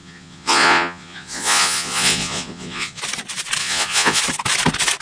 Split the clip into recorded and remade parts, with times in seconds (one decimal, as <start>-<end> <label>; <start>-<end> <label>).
0.0-3.0 remade; 3.0-3.6 recorded; 3.6-4.2 remade; 4.2-5.0 recorded